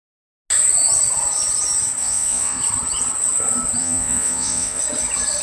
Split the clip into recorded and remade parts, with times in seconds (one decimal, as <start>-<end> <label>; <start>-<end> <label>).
0.0-2.0 recorded; 2.0-2.6 remade; 2.6-3.8 recorded; 3.8-4.8 remade; 4.8-5.4 recorded